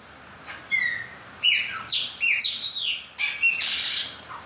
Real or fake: real